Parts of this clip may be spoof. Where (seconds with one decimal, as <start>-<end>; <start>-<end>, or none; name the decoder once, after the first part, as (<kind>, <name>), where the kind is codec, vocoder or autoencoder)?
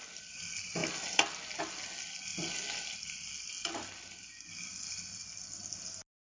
none